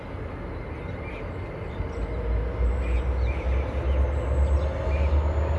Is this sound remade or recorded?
recorded